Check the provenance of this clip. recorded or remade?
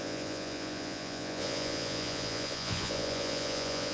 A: remade